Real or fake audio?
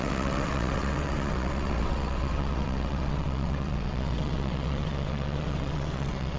fake